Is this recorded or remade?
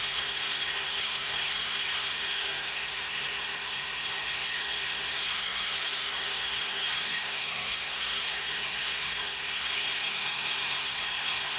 remade